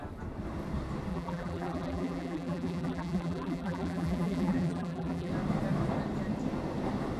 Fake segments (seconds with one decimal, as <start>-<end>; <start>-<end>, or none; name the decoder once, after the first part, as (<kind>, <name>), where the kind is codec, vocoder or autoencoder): 1.1-5.3 (vocoder, BigVGAN v2)